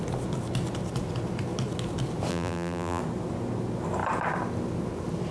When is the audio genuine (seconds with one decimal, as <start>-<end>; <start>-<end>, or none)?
0.0-2.3; 3.0-5.3